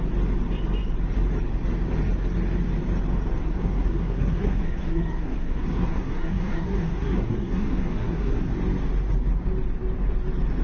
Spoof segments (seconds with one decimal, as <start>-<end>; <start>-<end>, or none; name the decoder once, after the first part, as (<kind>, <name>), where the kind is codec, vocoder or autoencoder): 3.4-8.5 (codec, SNAC)